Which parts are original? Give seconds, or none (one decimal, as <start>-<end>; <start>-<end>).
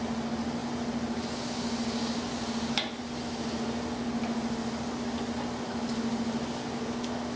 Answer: 0.0-7.4